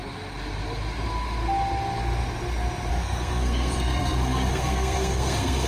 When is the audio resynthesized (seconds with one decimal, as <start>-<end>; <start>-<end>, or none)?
2.9-5.7